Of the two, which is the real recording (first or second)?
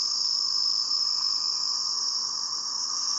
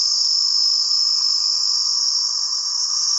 second